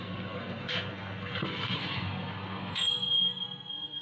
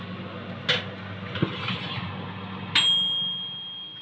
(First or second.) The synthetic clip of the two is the first